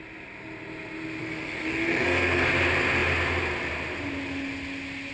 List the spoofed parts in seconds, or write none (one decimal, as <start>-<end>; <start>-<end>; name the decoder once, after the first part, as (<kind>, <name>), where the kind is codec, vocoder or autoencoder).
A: 1.2-2.5 (codec, SNAC)